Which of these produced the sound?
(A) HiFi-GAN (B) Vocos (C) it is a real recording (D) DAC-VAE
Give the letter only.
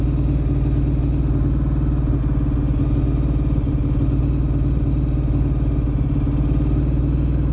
C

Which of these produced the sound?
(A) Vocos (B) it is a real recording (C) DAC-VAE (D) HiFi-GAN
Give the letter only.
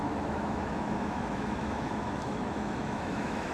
C